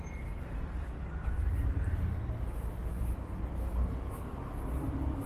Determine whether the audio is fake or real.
real